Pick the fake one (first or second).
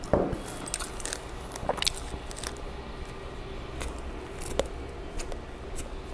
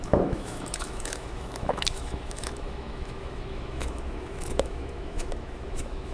second